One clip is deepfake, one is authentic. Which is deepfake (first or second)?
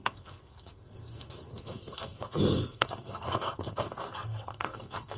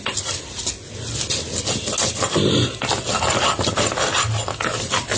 first